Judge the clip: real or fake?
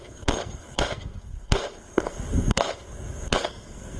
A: fake